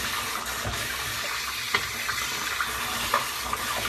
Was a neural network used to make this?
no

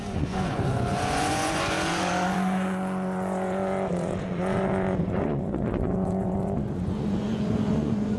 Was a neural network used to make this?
yes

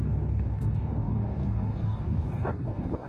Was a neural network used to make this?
yes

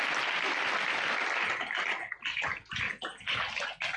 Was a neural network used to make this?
no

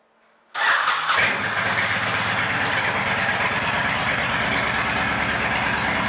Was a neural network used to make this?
yes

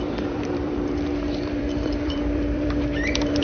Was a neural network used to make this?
yes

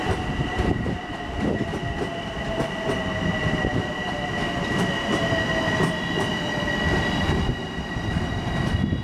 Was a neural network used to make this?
yes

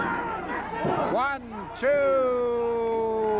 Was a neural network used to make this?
no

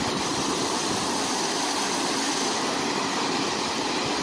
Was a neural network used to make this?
no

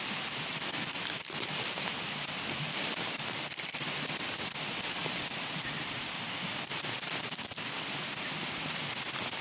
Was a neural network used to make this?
yes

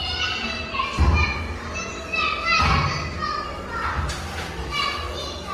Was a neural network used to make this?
no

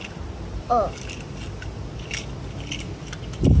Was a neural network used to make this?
no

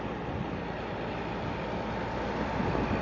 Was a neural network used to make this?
no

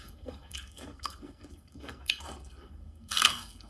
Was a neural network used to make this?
yes